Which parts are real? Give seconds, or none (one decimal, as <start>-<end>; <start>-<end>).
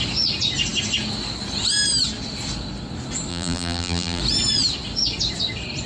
0.0-3.3; 4.2-5.9